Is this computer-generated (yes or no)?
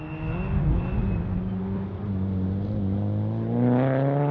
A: no